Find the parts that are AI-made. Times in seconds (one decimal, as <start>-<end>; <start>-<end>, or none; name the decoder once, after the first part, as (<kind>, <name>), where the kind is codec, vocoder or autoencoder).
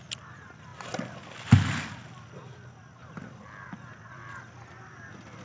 none